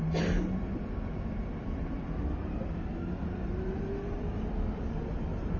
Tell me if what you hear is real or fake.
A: real